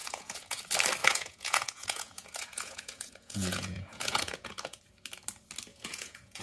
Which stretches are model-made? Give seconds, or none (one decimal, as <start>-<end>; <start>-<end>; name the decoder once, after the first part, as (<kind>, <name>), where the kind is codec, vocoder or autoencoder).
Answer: 0.0-0.6 (vocoder, Vocos); 1.0-4.8; 5.7-6.4

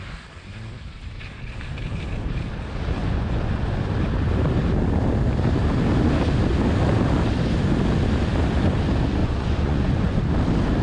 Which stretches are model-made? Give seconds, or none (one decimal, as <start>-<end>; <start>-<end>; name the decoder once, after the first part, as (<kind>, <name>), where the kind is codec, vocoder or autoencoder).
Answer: 3.0-3.9 (vocoder, Vocos); 9.2-10.2

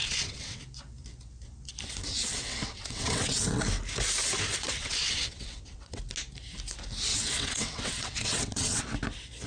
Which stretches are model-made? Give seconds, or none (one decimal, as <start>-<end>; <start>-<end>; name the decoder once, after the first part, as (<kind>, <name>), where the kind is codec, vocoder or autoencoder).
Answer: 0.0-0.6 (vocoder, WaveNeXt); 2.1-3.6; 4.5-6.0; 7.1-8.8

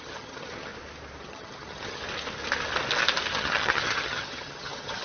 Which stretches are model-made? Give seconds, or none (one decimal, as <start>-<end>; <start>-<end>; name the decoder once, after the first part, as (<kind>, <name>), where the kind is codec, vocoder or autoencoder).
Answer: 0.0-0.7 (vocoder, HiFi-GAN); 1.2-2.0; 3.3-5.0